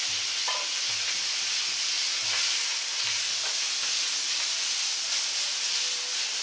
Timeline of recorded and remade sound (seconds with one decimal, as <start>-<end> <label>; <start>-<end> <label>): 0.0-6.4 recorded